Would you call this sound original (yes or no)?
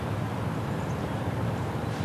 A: no